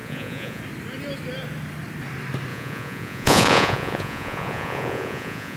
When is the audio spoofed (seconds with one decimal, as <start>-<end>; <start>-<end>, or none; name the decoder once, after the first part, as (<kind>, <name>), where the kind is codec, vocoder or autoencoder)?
0.0-0.6 (vocoder, Vocos); 2.5-5.6